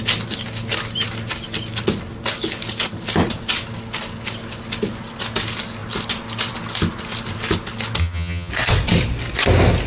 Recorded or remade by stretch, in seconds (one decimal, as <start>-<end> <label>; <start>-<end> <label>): 0.0-8.0 recorded; 8.0-8.5 remade; 8.5-9.9 recorded